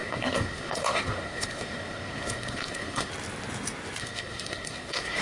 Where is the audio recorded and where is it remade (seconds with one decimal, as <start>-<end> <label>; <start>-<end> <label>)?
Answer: 0.0-3.1 remade; 3.1-4.0 recorded; 4.0-5.2 remade